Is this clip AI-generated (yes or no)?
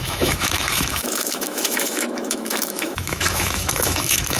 yes